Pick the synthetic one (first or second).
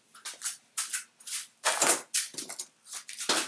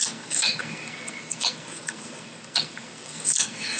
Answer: second